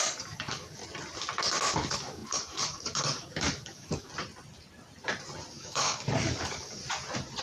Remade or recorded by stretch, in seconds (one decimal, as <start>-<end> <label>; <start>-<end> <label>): 0.0-0.8 remade; 0.8-1.7 recorded; 1.7-4.1 remade; 4.1-5.5 recorded; 5.5-6.8 remade; 6.8-7.4 recorded